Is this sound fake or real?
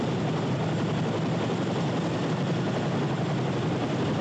real